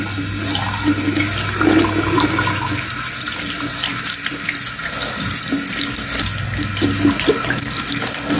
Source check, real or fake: real